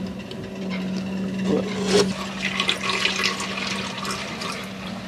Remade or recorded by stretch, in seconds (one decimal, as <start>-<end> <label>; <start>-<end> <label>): 0.0-5.1 recorded